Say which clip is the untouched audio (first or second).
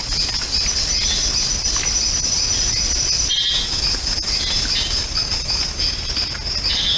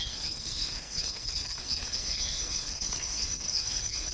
first